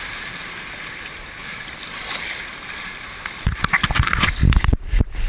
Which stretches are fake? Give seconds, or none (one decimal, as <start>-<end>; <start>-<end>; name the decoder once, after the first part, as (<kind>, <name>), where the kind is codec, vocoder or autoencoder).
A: 1.4-3.5 (vocoder, BigVGAN v2); 4.4-5.3